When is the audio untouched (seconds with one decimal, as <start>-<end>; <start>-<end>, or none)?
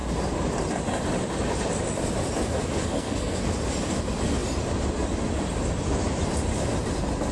0.0-2.8; 3.4-7.3